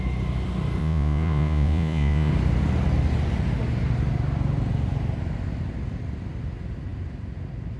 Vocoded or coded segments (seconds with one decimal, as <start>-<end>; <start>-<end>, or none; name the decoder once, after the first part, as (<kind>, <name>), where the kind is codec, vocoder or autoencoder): 0.8-2.3 (vocoder, Vocos)